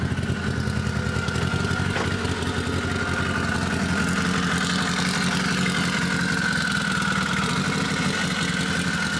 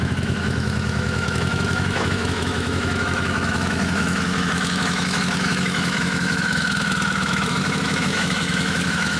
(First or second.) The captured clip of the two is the first